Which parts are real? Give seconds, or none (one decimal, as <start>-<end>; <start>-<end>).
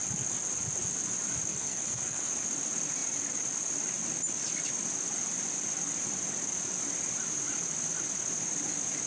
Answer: 0.0-1.5; 2.3-9.1